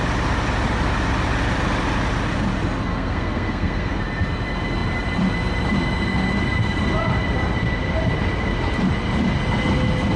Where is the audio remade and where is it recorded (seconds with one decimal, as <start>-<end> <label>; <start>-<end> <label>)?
0.0-2.9 recorded; 2.9-4.0 remade; 4.0-10.2 recorded